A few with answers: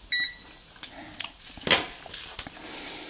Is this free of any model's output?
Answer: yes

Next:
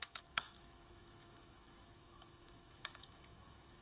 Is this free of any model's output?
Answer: no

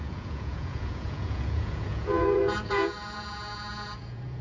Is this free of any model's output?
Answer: no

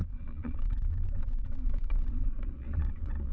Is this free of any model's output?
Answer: no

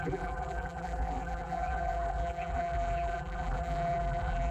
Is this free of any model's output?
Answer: no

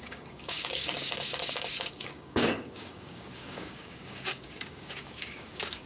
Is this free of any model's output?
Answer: no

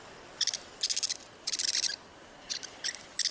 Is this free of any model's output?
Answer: yes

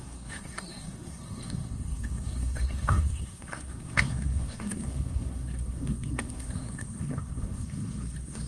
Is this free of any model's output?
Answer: no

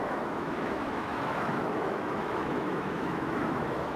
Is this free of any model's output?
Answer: no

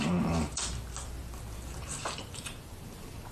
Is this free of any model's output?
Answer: yes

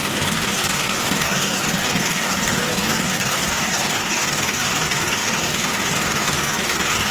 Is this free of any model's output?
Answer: no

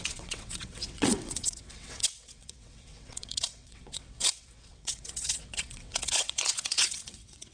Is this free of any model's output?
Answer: no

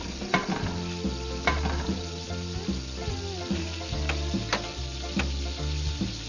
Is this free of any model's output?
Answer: yes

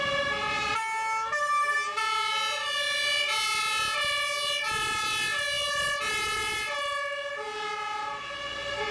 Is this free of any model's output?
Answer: yes